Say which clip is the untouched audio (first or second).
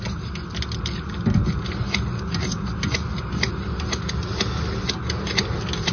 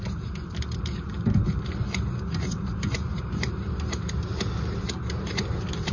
first